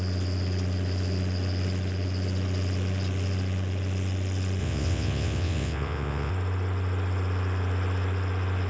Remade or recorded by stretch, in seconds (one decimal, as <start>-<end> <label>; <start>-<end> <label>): 0.0-4.6 recorded; 4.6-6.3 remade; 6.3-8.7 recorded